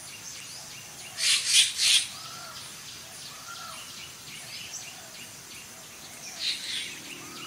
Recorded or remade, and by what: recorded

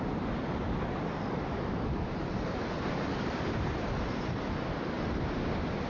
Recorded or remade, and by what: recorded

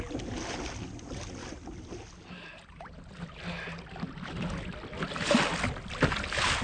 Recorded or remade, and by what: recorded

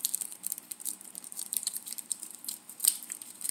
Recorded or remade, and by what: remade, vocoder, BigVGAN v2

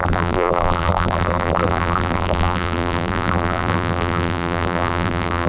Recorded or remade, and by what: remade, vocoder, BigVGAN v2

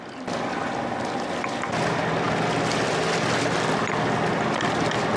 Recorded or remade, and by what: recorded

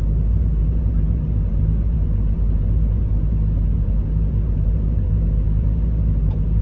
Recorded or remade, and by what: remade, vocoder, BigVGAN v2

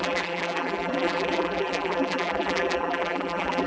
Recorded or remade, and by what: remade, vocoder, BigVGAN v2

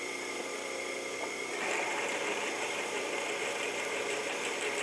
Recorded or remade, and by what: remade, vocoder, BigVGAN v2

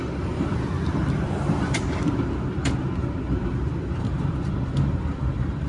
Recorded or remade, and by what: remade, vocoder, BigVGAN v2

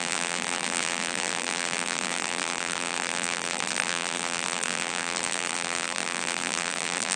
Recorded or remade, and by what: remade, vocoder, BigVGAN v2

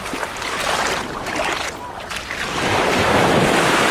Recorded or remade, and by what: recorded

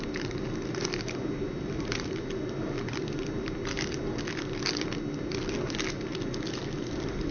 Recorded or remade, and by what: recorded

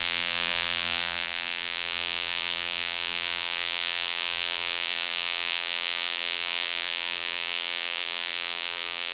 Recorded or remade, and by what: remade, vocoder, BigVGAN v2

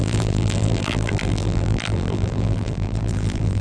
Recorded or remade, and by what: remade, vocoder, BigVGAN v2